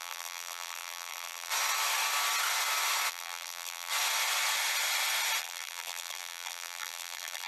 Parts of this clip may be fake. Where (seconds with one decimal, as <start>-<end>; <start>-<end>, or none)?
0.0-1.5; 3.1-3.9; 5.4-7.5